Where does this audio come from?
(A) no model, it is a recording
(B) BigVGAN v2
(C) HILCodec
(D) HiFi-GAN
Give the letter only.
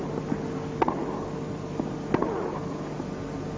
A